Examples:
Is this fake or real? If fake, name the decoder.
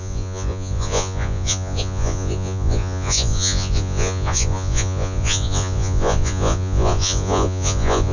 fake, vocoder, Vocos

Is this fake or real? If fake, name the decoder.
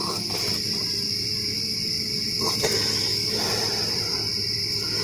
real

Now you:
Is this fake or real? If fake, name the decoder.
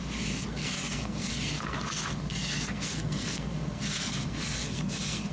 fake, codec, SNAC